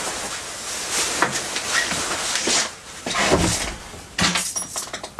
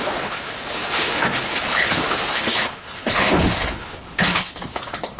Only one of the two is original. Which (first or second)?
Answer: first